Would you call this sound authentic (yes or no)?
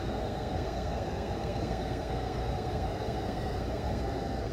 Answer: no